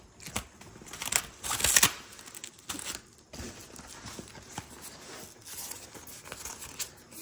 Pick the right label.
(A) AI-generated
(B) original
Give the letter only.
B